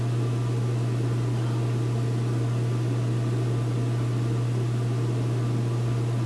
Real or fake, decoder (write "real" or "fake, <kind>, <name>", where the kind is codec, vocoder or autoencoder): real